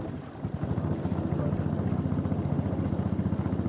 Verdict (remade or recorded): recorded